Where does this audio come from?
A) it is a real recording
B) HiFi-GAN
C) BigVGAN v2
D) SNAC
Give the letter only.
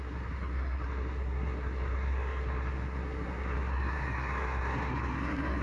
D